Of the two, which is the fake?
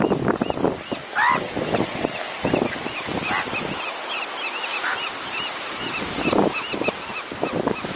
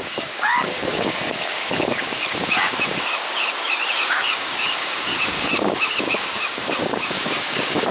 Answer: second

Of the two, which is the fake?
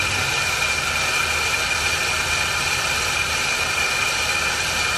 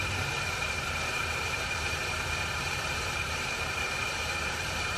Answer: second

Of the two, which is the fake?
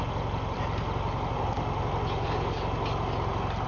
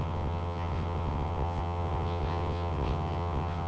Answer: second